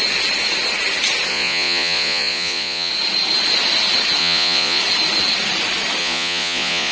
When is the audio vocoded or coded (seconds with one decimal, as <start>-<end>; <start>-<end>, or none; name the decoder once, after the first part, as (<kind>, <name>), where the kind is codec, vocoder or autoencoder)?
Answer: 1.3-2.9 (vocoder, Vocos); 4.2-4.8; 6.0-6.9